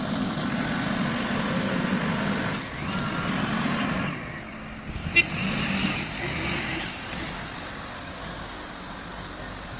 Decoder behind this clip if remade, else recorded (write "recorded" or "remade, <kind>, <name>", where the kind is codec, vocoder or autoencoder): recorded